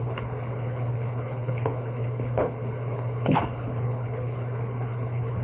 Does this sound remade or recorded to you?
remade